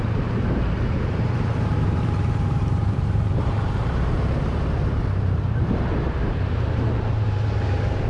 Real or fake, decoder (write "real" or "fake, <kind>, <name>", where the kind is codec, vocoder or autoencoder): fake, vocoder, BigVGAN v2